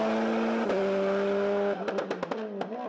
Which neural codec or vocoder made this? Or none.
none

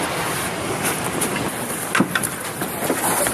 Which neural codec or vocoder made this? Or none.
none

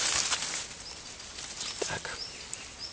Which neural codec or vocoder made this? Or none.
none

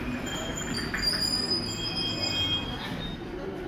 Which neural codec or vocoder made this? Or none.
none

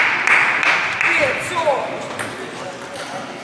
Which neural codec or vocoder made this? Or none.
none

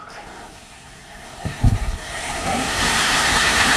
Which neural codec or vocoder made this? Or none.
codec, SNAC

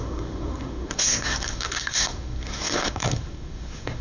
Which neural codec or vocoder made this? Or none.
codec, SNAC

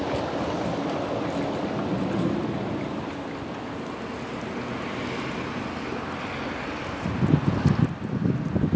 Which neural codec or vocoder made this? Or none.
none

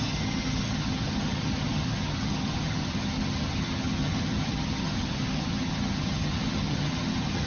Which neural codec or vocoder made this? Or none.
vocoder, HiFi-GAN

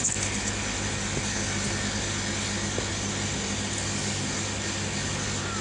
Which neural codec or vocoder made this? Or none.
none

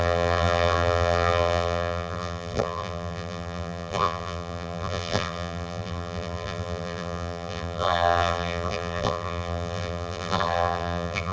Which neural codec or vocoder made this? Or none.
vocoder, BigVGAN v2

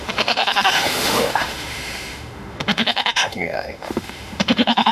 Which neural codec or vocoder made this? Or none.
autoencoder, DAC-VAE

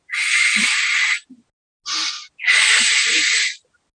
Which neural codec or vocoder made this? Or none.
none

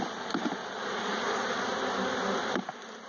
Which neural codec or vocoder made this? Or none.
none